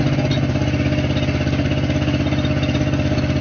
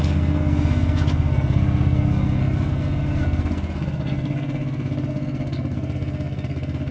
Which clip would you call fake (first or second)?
second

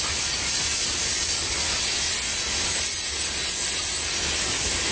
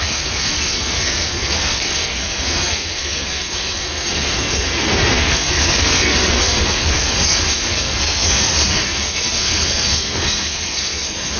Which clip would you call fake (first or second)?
second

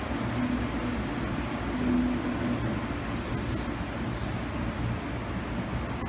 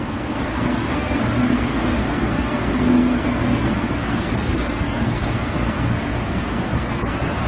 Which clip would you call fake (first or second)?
second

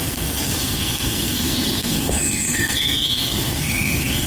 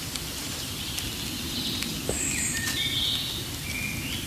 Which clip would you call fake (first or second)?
first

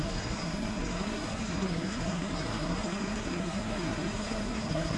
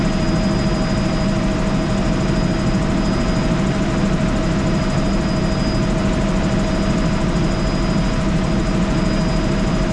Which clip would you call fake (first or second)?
first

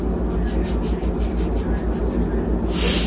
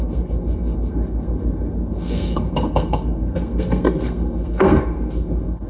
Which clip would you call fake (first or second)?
second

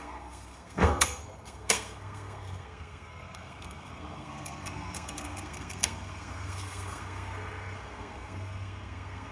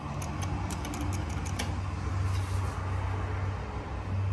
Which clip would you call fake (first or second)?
first